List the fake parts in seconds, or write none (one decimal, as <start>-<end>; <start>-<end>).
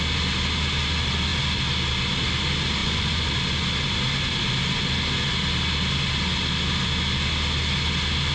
2.8-3.3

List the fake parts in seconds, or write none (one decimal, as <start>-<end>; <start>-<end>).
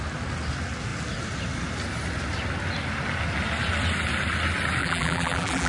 4.8-5.7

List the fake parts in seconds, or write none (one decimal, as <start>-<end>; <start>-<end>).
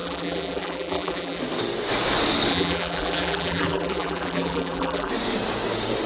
0.0-1.4; 2.5-5.1